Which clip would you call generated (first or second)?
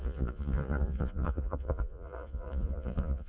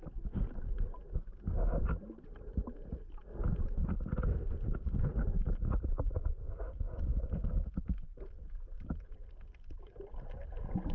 first